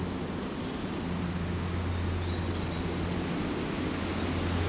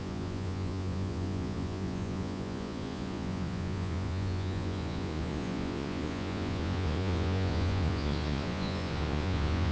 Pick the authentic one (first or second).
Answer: first